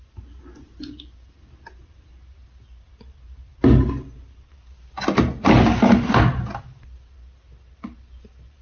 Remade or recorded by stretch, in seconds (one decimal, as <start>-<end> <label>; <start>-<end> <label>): 0.0-8.6 recorded